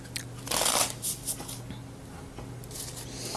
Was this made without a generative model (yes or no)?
yes